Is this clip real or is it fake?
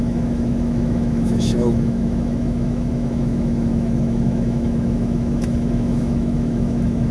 fake